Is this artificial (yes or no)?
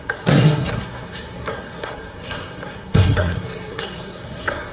yes